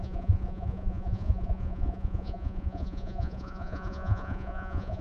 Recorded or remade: remade